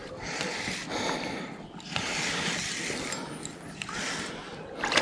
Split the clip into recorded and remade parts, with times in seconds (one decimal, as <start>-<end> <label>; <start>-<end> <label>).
0.0-5.0 recorded